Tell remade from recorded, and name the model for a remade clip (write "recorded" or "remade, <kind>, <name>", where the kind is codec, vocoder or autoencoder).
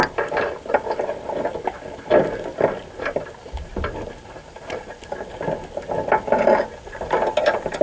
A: recorded